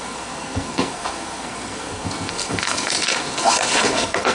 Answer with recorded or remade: remade